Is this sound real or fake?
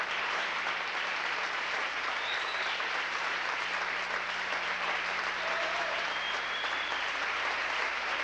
fake